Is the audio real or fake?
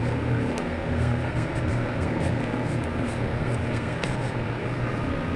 fake